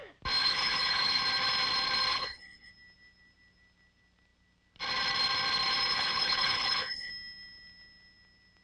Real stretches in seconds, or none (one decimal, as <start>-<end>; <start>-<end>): 0.0-0.4; 1.2-2.1; 2.7-5.9; 7.1-8.6